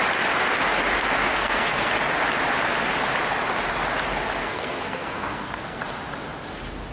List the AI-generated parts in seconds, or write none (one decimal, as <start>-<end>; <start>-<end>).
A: 1.3-1.9; 4.4-5.8